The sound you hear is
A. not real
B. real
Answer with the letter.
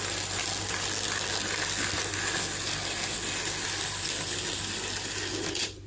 B